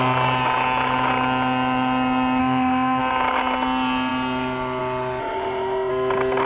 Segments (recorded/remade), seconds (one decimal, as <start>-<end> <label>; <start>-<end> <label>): 0.0-2.4 recorded; 2.4-3.0 remade; 3.0-5.2 recorded; 5.2-5.9 remade; 5.9-6.5 recorded

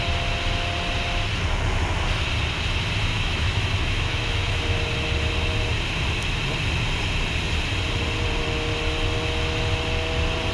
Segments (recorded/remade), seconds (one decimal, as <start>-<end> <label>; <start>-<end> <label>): 0.0-3.1 recorded; 3.1-4.6 remade; 4.6-10.5 recorded

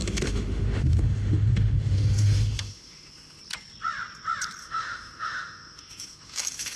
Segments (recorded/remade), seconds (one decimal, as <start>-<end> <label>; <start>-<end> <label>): 0.0-3.4 remade; 3.4-4.6 recorded; 4.6-6.8 remade

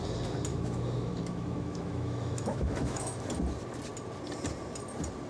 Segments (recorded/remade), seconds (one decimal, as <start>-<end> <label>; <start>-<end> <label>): 0.0-0.5 recorded; 0.5-3.2 remade; 3.2-5.3 recorded

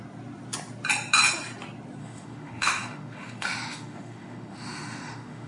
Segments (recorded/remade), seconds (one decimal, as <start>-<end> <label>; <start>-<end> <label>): 0.0-2.0 recorded; 2.0-5.5 remade

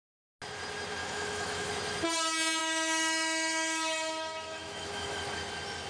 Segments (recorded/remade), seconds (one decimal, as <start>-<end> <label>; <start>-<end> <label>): 0.0-1.0 recorded; 1.0-1.7 remade; 1.7-2.6 recorded; 2.6-5.2 remade; 5.2-5.9 recorded